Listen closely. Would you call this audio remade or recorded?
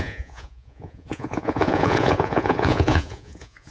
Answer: remade